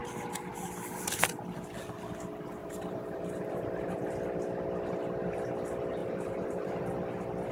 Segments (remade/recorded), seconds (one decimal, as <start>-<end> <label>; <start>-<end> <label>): 0.0-0.5 recorded; 0.5-1.3 remade; 1.3-2.6 recorded; 2.6-4.0 remade; 4.0-6.0 recorded; 6.0-6.8 remade; 6.8-7.5 recorded